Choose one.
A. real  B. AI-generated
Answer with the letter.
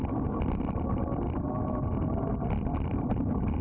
A